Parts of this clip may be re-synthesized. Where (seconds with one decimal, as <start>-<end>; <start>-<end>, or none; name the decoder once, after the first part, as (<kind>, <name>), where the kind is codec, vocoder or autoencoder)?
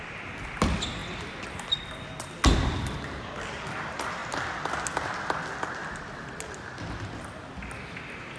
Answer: none